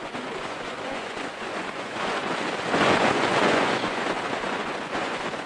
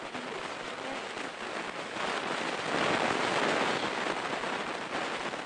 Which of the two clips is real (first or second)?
second